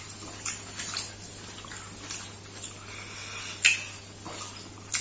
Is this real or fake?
real